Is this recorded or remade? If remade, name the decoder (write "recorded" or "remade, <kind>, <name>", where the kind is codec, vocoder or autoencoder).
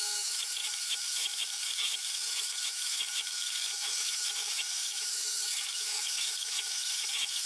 remade, autoencoder, DAC-VAE